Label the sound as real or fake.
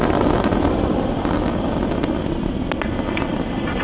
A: real